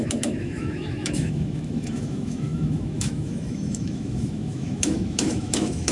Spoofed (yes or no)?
yes